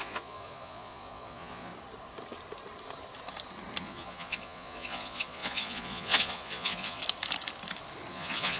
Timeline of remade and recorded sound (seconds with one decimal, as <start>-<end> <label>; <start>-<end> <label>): 0.0-1.7 remade; 1.7-3.8 recorded; 3.8-7.0 remade; 7.0-8.1 recorded; 8.1-8.6 remade